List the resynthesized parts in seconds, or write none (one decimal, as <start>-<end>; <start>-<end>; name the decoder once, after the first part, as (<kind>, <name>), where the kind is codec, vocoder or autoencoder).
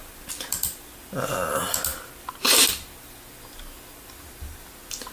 none